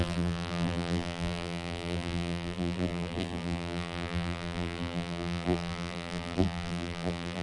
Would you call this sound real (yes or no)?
no